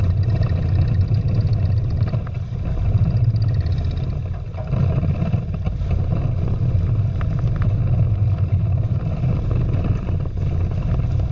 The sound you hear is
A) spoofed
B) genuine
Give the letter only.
B